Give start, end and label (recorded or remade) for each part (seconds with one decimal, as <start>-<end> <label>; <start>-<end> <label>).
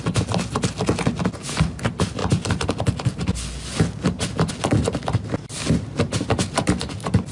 0.0-7.3 recorded